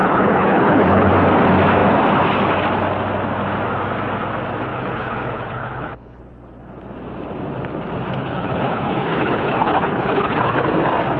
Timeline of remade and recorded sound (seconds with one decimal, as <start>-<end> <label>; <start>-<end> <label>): 0.0-1.1 remade; 1.1-4.7 recorded; 4.7-6.2 remade; 6.2-8.2 recorded; 8.2-10.5 remade; 10.5-11.2 recorded

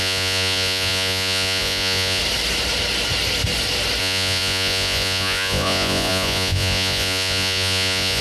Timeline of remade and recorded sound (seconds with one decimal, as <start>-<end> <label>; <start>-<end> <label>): 0.0-2.2 remade; 2.2-4.0 recorded; 4.0-8.2 remade

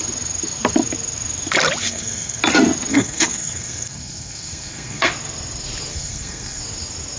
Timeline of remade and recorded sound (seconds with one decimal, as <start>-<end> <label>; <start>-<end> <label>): 0.0-1.8 recorded; 1.8-2.4 remade; 2.4-2.9 recorded; 2.9-5.1 remade; 5.1-5.9 recorded; 5.9-6.6 remade; 6.6-7.2 recorded

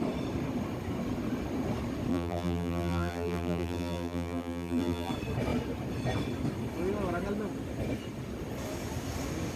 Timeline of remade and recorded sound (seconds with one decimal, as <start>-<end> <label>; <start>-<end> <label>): 0.0-2.1 recorded; 2.1-5.1 remade; 5.1-9.6 recorded

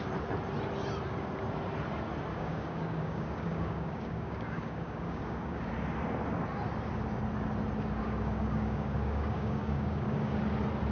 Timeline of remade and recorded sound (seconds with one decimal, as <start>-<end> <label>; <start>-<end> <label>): 0.0-2.3 recorded; 2.3-5.7 remade; 5.7-8.0 recorded; 8.0-10.4 remade; 10.4-10.9 recorded